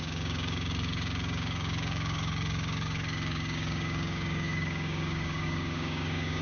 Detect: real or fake fake